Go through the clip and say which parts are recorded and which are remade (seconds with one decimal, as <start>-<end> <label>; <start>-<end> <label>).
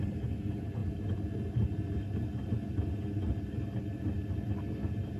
0.0-5.2 recorded